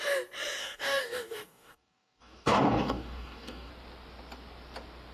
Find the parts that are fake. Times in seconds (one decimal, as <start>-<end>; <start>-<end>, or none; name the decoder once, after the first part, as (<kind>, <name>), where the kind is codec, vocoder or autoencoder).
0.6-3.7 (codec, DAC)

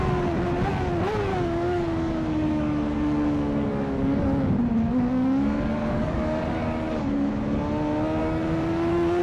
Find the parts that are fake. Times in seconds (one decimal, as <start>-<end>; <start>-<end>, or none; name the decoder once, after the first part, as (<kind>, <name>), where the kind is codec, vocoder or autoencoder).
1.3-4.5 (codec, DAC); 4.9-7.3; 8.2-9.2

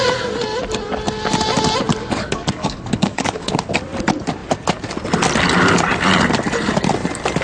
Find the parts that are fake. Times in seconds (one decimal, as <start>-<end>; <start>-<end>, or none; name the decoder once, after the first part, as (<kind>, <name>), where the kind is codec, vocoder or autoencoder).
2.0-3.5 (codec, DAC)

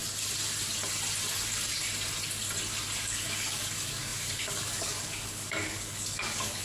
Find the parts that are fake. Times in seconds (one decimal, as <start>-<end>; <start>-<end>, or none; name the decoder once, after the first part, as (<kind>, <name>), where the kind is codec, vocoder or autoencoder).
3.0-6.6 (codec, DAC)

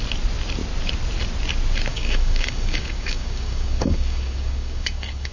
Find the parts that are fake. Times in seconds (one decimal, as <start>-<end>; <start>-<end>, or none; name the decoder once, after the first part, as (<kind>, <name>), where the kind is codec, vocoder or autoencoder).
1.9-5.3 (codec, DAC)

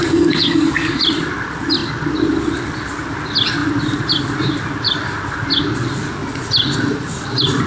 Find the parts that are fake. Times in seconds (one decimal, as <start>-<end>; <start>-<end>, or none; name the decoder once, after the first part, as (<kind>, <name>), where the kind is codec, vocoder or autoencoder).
0.0-1.0 (codec, DAC)

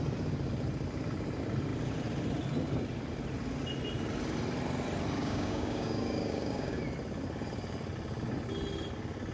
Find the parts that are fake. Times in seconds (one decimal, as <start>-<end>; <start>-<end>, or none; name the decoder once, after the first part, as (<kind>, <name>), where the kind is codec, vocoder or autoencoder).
5.2-6.8 (codec, DAC)